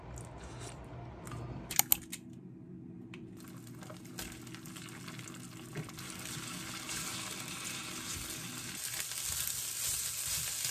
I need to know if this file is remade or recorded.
recorded